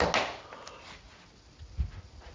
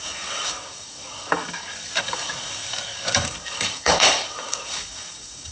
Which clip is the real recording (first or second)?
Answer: first